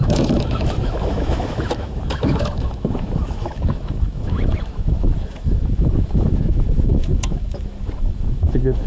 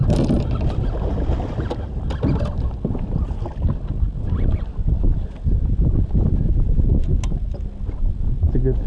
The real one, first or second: second